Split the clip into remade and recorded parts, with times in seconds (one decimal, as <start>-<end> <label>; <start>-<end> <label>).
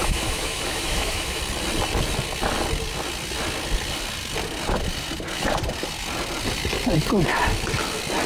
0.0-1.4 remade; 1.4-8.3 recorded